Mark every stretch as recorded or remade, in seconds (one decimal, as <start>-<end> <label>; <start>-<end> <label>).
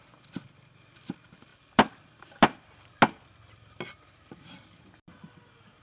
0.0-5.8 recorded